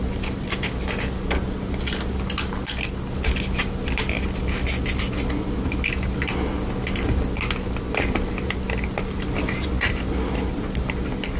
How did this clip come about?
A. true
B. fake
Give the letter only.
A